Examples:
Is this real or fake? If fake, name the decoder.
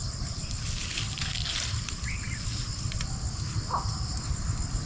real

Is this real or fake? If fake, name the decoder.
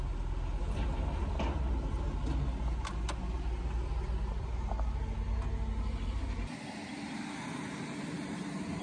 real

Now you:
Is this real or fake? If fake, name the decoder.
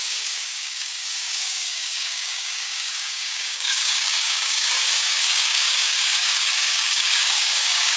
fake, codec, DAC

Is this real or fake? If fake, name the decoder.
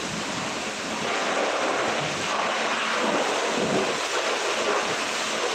real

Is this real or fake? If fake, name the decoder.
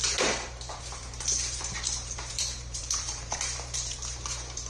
fake, vocoder, BigVGAN v2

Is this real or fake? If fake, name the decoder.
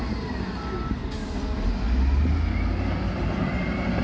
real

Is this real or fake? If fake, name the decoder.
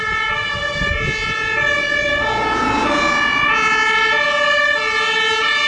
real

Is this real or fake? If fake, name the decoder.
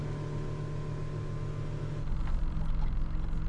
real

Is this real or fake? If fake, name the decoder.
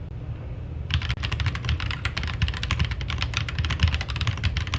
real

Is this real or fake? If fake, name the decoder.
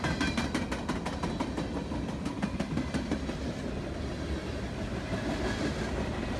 real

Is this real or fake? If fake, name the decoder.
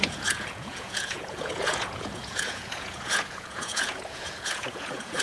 fake, vocoder, Vocos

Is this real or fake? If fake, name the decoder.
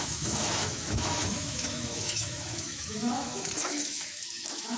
fake, autoencoder, DAC-VAE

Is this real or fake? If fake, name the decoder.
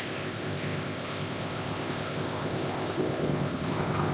fake, codec, ZipCodec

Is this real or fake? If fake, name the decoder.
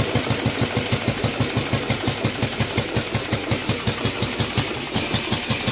real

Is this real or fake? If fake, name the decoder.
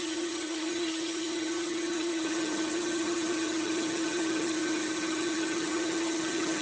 fake, vocoder, HiFi-GAN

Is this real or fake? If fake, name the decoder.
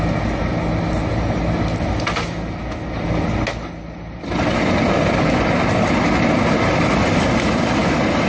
real